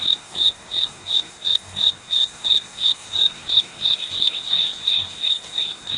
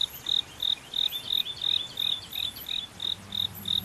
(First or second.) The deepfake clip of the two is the first